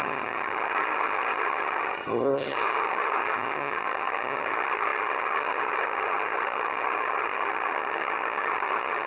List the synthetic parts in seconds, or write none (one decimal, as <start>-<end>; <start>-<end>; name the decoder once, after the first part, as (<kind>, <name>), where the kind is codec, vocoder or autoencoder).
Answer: 0.0-9.1 (vocoder, HiFi-GAN)